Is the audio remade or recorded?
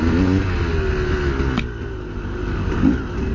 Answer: recorded